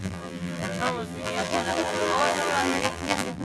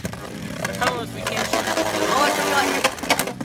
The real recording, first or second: second